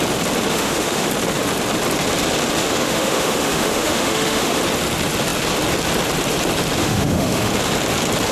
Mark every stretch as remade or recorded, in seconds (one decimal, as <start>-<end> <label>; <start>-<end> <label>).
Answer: 0.0-0.5 recorded; 0.5-1.1 remade; 1.1-2.6 recorded; 2.6-4.6 remade; 4.6-6.8 recorded; 6.8-7.5 remade; 7.5-8.3 recorded